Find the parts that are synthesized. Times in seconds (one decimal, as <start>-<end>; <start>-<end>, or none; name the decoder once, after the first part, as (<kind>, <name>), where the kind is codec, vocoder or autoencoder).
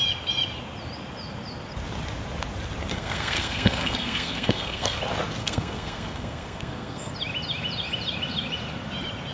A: 2.9-5.0 (codec, SNAC); 5.4-7.1